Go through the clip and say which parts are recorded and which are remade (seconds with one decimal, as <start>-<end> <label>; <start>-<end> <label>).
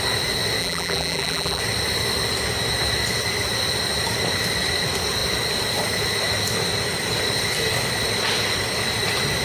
0.0-0.6 recorded; 0.6-1.6 remade; 1.6-9.4 recorded